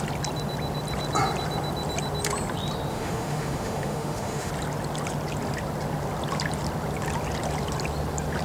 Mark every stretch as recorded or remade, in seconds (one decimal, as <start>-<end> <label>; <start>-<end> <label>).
0.0-2.9 recorded; 2.9-4.5 remade; 4.5-8.4 recorded